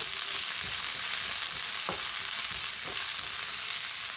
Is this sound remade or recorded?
recorded